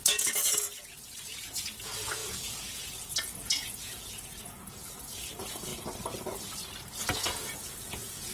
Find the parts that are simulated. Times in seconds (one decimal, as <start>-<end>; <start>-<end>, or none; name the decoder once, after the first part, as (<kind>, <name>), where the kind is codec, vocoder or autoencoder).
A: 0.0-5.7 (vocoder, Vocos); 7.1-8.3